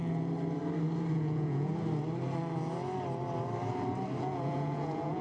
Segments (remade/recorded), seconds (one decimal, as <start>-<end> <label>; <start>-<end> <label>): 0.0-1.1 recorded; 1.1-1.7 remade; 1.7-4.2 recorded; 4.2-5.2 remade